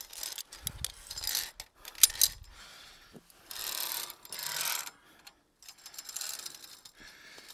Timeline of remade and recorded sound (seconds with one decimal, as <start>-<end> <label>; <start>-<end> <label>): 0.0-7.5 recorded